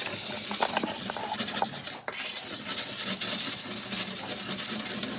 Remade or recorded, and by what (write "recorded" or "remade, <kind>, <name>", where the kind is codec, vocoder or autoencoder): recorded